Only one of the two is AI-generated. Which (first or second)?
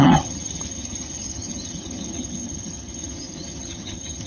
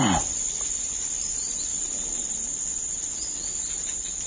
first